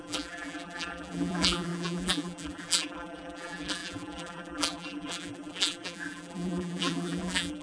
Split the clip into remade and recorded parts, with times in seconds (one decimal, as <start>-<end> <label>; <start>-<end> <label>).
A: 0.0-7.6 remade